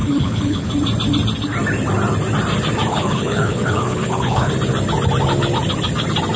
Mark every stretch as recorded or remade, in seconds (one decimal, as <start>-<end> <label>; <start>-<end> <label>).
0.0-0.7 remade; 0.7-2.9 recorded; 2.9-4.5 remade; 4.5-6.4 recorded